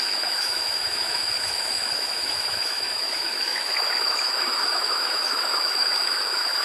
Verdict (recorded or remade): remade